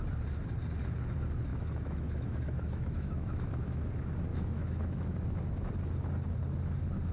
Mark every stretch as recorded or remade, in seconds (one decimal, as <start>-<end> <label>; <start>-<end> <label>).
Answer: 0.0-1.5 recorded; 1.5-3.9 remade; 3.9-4.3 recorded; 4.3-5.2 remade; 5.2-7.1 recorded